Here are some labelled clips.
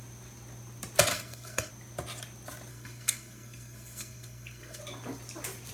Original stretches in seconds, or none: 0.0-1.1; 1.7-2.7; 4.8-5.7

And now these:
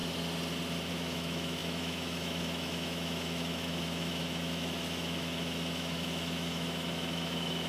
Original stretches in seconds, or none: 0.0-0.9

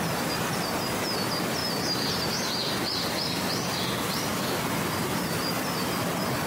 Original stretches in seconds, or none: 0.0-6.5

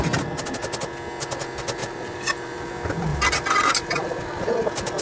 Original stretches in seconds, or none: 0.0-1.8; 2.7-3.1; 4.4-5.0

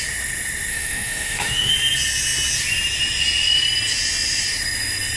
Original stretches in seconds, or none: 0.0-0.7; 1.7-5.2